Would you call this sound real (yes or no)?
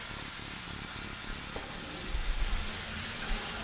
yes